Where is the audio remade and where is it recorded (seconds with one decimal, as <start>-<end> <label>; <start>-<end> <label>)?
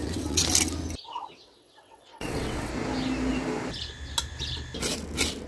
0.0-0.4 remade; 0.4-1.0 recorded; 1.0-2.7 remade; 2.7-5.5 recorded